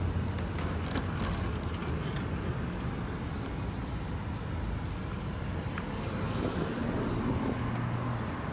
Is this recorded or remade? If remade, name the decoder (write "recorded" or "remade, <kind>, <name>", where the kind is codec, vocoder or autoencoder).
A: recorded